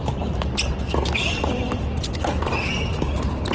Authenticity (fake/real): real